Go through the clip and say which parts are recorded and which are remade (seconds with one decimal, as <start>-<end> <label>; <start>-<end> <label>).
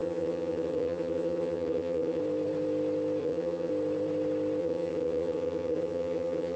0.0-2.2 remade; 2.2-3.2 recorded; 3.2-3.7 remade; 3.7-4.6 recorded; 4.6-6.6 remade